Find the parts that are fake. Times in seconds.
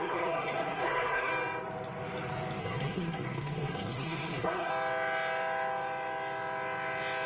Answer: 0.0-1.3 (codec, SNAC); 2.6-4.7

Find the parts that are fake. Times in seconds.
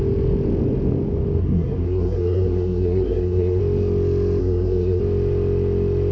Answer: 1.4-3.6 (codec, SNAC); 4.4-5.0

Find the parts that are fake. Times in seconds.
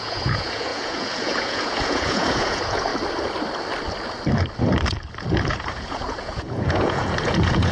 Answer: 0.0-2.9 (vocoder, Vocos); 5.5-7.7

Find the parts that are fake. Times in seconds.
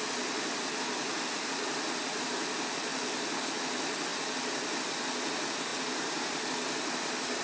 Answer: 2.9-3.4 (vocoder, BigVGAN v2); 5.7-7.4